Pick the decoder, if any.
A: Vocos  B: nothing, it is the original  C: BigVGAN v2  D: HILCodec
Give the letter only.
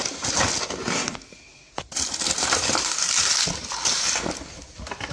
B